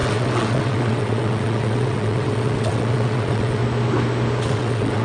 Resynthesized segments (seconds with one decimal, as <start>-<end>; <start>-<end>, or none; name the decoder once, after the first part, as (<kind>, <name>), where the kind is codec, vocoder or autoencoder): 0.0-3.6 (vocoder, WaveNeXt); 4.4-5.0